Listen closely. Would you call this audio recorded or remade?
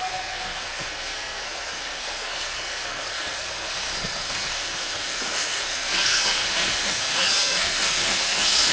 remade